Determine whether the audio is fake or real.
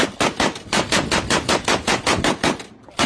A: real